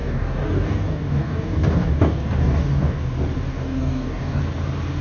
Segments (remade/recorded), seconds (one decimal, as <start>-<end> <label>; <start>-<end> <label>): 0.0-3.0 remade; 3.0-3.5 recorded; 3.5-4.4 remade; 4.4-5.0 recorded